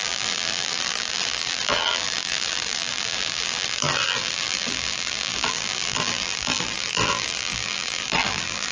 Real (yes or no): no